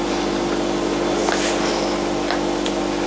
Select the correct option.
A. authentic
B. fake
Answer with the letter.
A